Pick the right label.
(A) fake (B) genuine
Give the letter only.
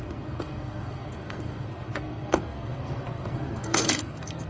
A